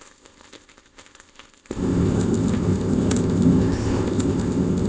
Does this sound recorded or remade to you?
remade